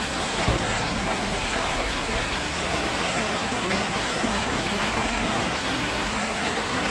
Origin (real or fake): fake